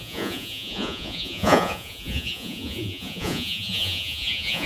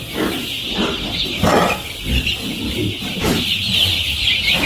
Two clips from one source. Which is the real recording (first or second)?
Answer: second